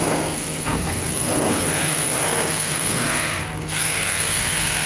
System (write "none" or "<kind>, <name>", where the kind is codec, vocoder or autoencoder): codec, SNAC